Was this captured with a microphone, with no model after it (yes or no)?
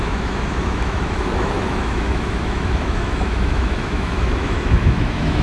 no